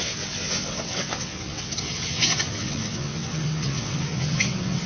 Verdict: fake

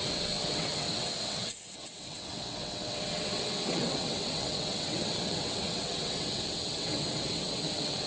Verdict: fake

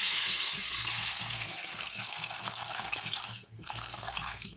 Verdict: fake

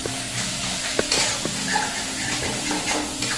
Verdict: real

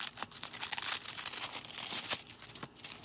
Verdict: real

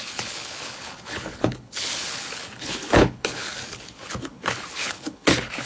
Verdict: fake